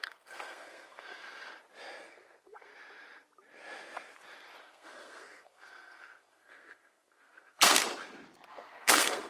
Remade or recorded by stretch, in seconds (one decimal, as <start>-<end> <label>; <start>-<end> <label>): 0.0-1.2 remade; 1.2-2.1 recorded; 2.1-2.7 remade; 2.7-4.6 recorded; 4.6-7.8 remade; 7.8-8.5 recorded; 8.5-9.3 remade

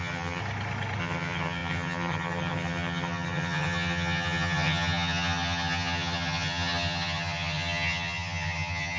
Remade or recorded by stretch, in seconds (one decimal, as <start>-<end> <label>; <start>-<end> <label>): 0.0-0.4 remade; 0.4-1.0 recorded; 1.0-9.0 remade

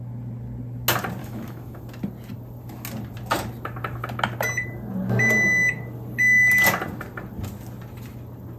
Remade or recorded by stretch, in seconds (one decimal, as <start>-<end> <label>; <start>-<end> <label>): 0.0-1.2 recorded; 1.2-1.8 remade; 1.8-8.6 recorded

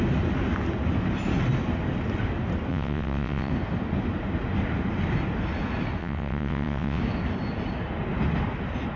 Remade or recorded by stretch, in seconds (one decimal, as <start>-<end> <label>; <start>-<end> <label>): 0.0-2.7 recorded; 2.7-3.5 remade; 3.5-6.0 recorded; 6.0-7.0 remade; 7.0-9.0 recorded

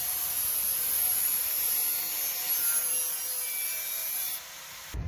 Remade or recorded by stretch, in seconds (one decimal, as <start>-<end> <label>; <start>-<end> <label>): 0.0-1.8 remade; 1.8-3.3 recorded; 3.3-5.1 remade

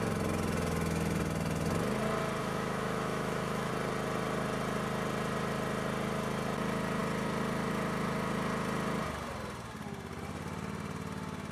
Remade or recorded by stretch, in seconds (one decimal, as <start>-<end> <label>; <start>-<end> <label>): 0.0-2.4 recorded; 2.4-3.7 remade; 3.7-11.5 recorded